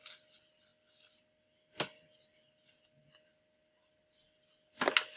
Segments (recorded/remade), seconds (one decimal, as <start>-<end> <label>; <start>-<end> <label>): 0.0-5.2 recorded